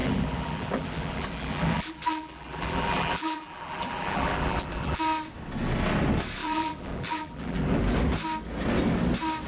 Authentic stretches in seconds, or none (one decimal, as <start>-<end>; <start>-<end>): 5.0-6.4; 7.8-9.5